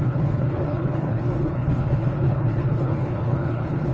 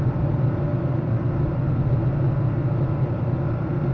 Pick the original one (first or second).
second